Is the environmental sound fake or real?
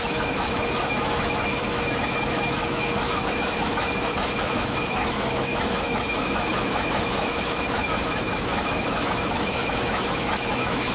fake